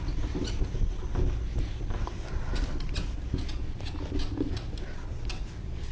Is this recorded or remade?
recorded